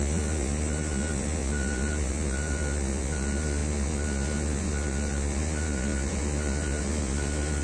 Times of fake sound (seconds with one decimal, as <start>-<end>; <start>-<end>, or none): 0.0-7.6